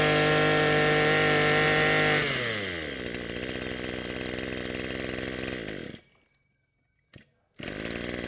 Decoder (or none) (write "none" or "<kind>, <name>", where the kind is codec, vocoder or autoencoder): none